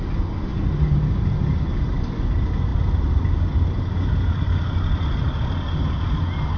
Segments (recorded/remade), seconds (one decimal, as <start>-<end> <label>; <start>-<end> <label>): 0.0-6.6 recorded